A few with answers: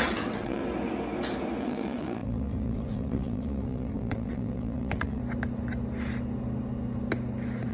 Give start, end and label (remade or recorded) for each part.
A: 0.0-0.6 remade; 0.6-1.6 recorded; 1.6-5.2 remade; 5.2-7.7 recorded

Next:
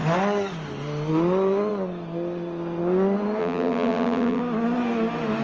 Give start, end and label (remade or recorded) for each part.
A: 0.0-3.4 recorded; 3.4-4.4 remade; 4.4-5.4 recorded

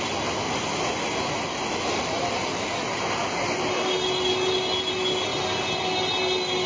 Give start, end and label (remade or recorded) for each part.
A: 0.0-6.7 recorded

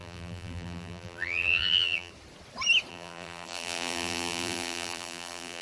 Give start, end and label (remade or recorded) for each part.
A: 0.0-2.1 remade; 2.1-2.9 recorded; 2.9-5.6 remade

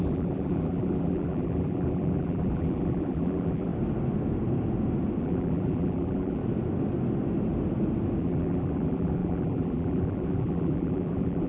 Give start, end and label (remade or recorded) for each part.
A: 0.0-3.7 remade; 3.7-5.2 recorded; 5.2-6.4 remade; 6.4-8.2 recorded; 8.2-11.5 remade

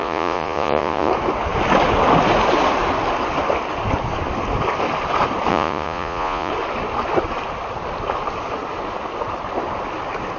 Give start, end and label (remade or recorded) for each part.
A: 0.0-1.1 remade; 1.1-5.5 recorded; 5.5-6.5 remade; 6.5-10.4 recorded

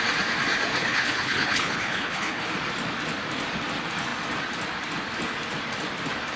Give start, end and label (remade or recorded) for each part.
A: 0.0-0.7 recorded; 0.7-2.5 remade; 2.5-6.4 recorded